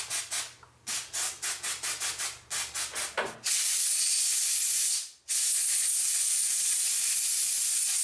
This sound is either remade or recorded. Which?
recorded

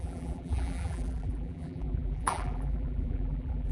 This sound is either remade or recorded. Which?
remade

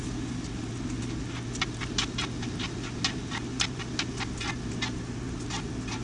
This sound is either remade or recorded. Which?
recorded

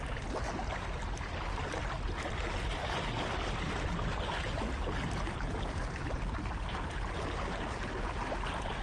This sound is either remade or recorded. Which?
recorded